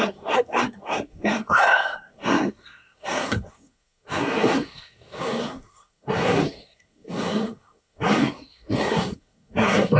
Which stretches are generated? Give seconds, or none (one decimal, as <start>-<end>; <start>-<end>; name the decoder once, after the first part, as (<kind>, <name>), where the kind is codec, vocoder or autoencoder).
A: 0.0-10.0 (codec, SNAC)